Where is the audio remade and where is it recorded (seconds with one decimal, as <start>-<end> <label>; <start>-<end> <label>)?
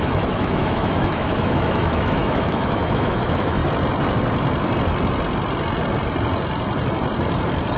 0.0-3.6 remade; 3.6-7.8 recorded